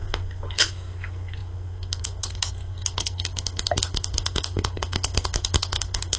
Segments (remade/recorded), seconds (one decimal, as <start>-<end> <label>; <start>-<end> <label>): 0.0-6.2 remade

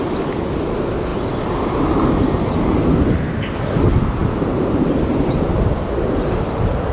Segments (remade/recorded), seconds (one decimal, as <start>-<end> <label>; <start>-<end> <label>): 0.0-1.1 recorded; 1.1-2.3 remade; 2.3-4.2 recorded; 4.2-5.6 remade; 5.6-6.9 recorded

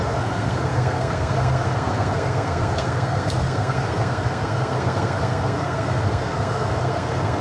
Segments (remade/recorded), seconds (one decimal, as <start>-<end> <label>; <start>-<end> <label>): 0.0-7.4 remade

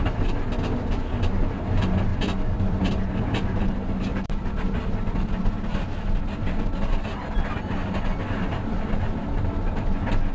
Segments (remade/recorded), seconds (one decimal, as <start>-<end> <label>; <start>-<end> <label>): 0.0-2.1 recorded; 2.1-3.2 remade; 3.2-4.1 recorded; 4.1-4.8 remade; 4.8-10.3 recorded

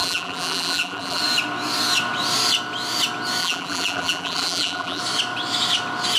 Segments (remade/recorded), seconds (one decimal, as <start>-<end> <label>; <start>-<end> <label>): 0.0-1.2 remade; 1.2-3.4 recorded; 3.4-5.0 remade; 5.0-6.2 recorded